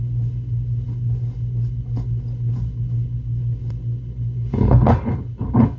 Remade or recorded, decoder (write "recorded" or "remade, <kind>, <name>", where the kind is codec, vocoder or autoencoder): remade, codec, HILCodec